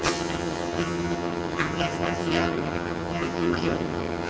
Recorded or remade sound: remade